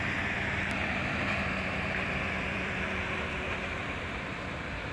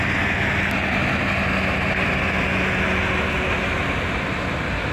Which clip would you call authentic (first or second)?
second